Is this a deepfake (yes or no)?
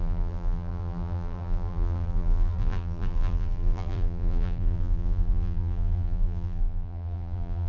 yes